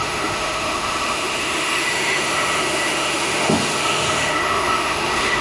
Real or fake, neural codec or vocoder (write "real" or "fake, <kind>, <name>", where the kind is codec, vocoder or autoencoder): fake, autoencoder, DAC-VAE